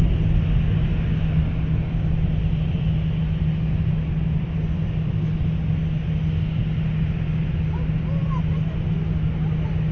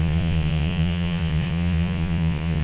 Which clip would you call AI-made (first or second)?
second